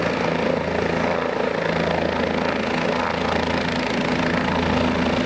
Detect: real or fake real